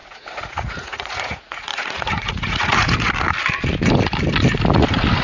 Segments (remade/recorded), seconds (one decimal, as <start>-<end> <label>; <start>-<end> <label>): 0.0-3.1 remade; 3.1-5.2 recorded